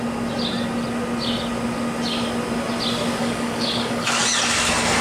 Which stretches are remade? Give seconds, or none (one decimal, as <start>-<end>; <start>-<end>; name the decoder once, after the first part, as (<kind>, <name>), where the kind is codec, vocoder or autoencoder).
3.2-4.2 (codec, DAC)